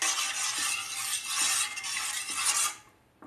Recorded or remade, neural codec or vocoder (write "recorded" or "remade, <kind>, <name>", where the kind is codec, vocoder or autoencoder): recorded